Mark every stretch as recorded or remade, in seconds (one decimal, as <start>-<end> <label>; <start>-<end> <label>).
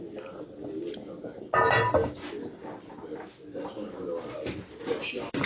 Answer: 0.0-5.5 recorded